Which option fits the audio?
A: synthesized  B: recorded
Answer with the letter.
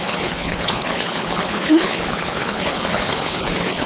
A